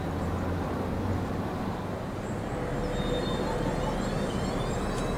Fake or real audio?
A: real